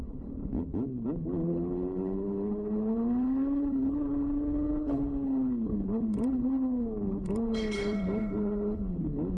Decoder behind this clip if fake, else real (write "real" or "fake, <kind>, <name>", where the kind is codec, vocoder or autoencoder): fake, codec, HILCodec